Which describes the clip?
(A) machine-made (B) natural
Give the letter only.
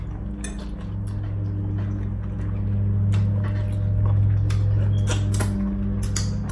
B